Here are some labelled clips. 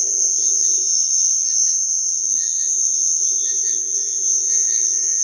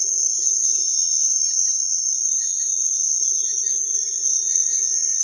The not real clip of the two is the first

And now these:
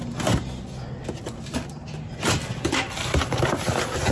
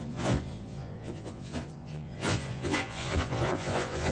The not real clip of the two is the second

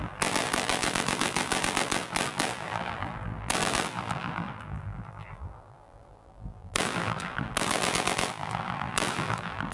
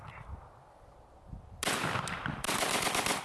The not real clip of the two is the first